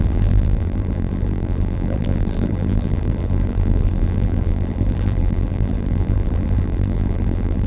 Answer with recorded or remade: remade